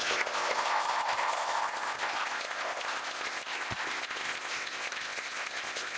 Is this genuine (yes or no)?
no